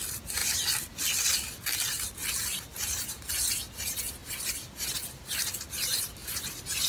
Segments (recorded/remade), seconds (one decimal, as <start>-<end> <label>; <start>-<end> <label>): 0.0-4.2 recorded; 4.2-5.7 remade; 5.7-6.9 recorded